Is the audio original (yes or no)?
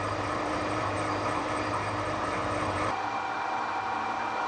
no